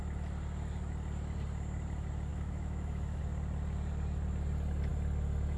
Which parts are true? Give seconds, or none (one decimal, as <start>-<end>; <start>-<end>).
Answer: 0.0-2.3; 3.2-5.6